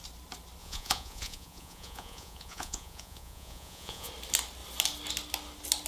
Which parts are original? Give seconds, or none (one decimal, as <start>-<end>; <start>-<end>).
0.0-0.6; 4.1-5.9